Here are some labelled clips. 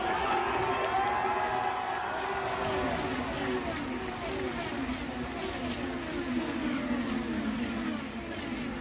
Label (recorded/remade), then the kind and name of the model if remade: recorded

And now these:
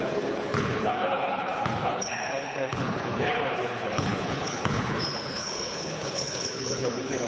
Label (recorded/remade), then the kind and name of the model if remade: remade, codec, HILCodec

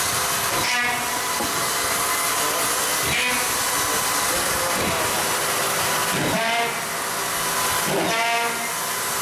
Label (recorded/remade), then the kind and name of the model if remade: recorded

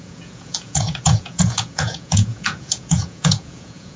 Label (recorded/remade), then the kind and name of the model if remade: remade, vocoder, Vocos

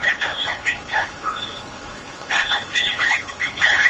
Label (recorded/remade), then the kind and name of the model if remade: remade, codec, HILCodec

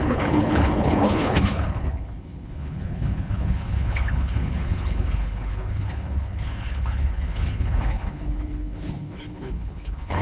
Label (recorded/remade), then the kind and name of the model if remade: remade, codec, HILCodec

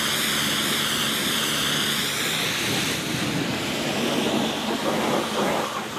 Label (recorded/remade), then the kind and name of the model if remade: recorded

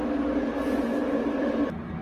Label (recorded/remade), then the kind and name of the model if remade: recorded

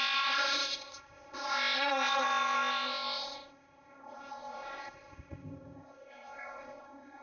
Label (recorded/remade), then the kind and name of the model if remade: remade, codec, ZipCodec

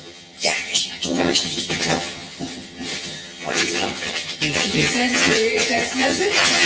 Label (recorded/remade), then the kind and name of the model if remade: remade, vocoder, HiFi-GAN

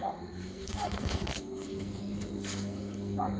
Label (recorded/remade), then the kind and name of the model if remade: remade, codec, SNAC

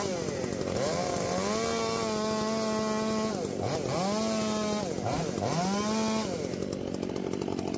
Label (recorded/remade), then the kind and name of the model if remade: recorded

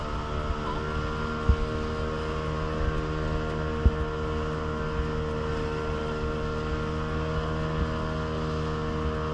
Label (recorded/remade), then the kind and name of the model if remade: recorded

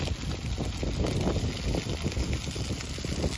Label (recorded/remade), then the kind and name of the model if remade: recorded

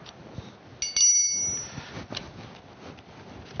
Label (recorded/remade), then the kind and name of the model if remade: recorded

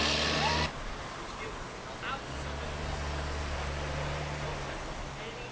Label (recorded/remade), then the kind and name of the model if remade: recorded